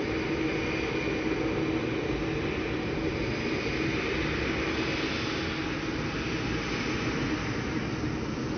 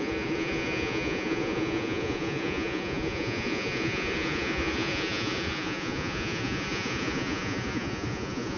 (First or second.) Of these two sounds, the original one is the first